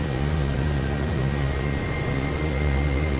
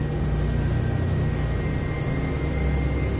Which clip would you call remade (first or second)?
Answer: first